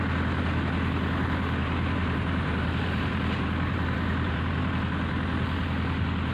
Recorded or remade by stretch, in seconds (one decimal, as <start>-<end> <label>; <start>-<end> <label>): 0.0-1.6 recorded; 1.6-4.7 remade; 4.7-6.3 recorded